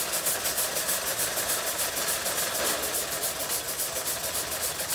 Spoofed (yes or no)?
no